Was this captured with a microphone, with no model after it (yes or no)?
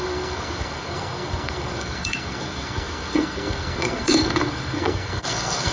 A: no